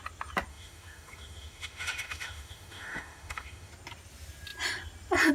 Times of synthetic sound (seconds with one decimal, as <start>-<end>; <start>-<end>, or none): 0.5-3.7

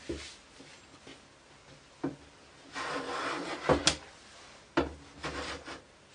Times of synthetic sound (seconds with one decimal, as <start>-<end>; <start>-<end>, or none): none

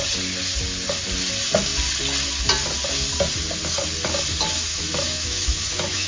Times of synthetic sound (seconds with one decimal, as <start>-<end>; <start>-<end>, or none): 4.7-6.1

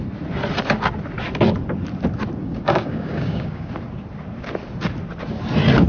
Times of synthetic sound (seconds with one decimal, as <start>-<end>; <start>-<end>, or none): 2.4-3.7

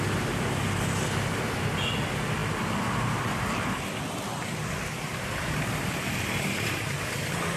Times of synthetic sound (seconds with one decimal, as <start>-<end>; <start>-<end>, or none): 2.4-6.2

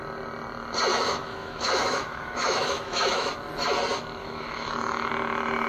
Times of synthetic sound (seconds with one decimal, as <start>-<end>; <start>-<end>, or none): 0.9-3.3; 4.2-4.7

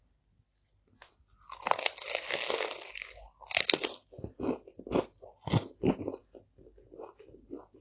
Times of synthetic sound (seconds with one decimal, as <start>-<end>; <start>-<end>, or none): none